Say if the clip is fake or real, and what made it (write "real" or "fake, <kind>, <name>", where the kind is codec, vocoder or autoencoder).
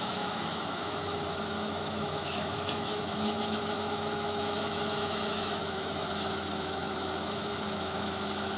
fake, autoencoder, DAC-VAE